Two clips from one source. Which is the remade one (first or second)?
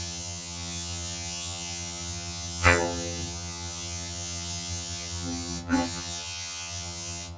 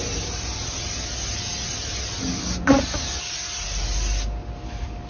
first